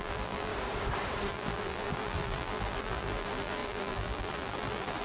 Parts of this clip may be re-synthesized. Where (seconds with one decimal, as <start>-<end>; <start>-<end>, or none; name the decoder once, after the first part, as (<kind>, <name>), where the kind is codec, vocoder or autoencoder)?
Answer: 0.0-0.5 (vocoder, BigVGAN v2); 1.3-5.0